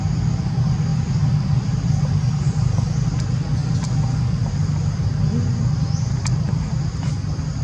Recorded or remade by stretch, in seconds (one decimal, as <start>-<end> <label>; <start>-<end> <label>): 0.0-7.6 recorded